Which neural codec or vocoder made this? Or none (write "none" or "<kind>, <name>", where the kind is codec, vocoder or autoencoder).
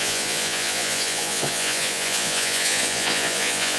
vocoder, Vocos